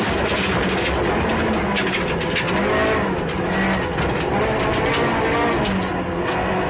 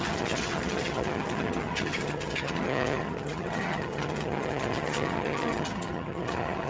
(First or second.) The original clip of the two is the first